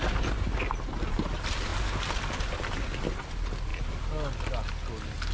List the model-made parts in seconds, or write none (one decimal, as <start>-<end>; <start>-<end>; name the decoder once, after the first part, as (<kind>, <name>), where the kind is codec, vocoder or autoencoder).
none